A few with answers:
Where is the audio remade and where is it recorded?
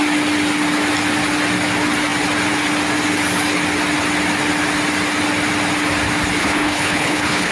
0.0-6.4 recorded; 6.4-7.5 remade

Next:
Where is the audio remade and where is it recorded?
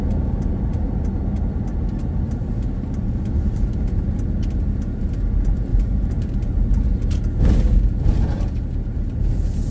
0.0-2.0 recorded; 2.0-3.5 remade; 3.5-5.7 recorded; 5.7-6.8 remade; 6.8-9.7 recorded